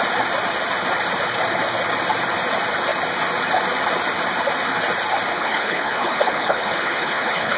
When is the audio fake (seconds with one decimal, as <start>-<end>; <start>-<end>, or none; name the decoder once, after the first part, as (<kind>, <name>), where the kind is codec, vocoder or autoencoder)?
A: 5.3-7.6 (codec, HILCodec)